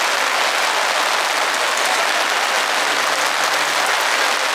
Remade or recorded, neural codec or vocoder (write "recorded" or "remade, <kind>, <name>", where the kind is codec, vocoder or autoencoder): recorded